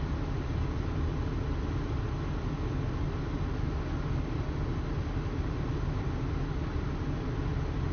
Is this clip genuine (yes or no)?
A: yes